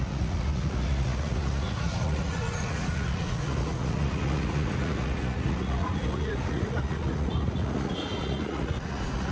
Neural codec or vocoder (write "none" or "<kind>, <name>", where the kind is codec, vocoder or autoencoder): vocoder, Vocos